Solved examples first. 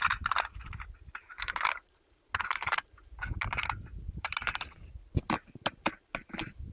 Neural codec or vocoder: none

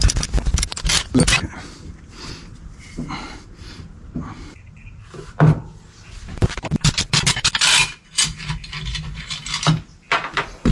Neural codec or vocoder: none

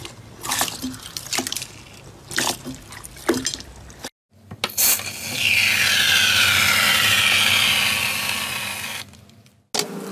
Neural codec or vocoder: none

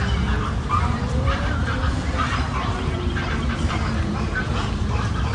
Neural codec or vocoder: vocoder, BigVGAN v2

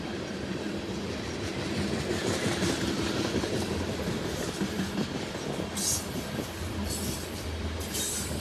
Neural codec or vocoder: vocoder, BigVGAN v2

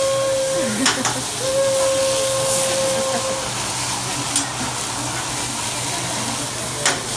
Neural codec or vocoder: none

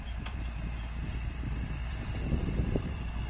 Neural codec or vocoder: vocoder, BigVGAN v2